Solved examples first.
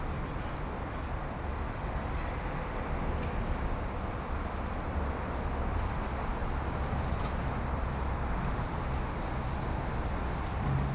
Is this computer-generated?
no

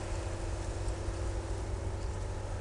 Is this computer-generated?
no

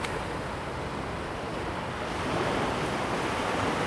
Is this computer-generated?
no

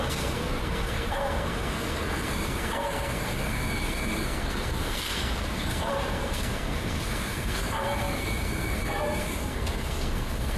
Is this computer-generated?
yes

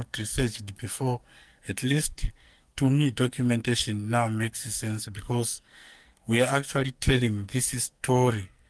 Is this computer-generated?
yes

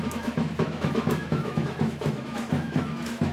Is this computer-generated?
yes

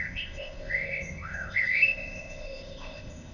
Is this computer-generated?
yes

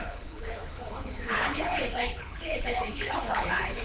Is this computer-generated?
yes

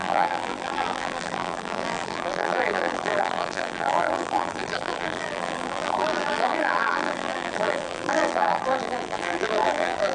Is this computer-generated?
yes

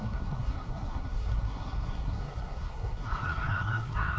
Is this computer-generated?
yes